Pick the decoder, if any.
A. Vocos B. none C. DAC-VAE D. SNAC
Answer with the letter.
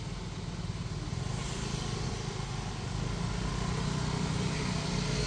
B